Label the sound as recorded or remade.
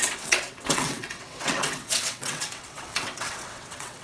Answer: remade